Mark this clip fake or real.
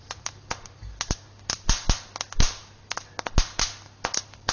real